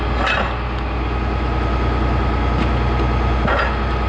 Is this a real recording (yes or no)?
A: yes